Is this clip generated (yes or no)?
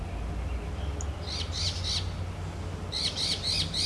no